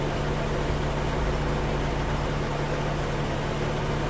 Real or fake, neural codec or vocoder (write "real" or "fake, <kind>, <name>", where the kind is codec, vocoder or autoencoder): real